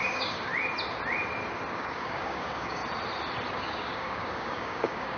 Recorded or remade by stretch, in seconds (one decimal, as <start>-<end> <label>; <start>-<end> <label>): 0.0-0.5 remade; 0.5-1.7 recorded; 1.7-2.8 remade; 2.8-3.5 recorded; 3.5-5.2 remade